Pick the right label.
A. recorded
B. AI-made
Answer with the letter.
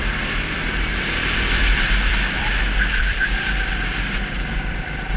B